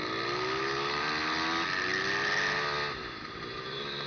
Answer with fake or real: real